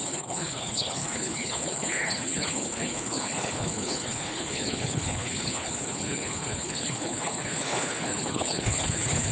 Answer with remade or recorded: remade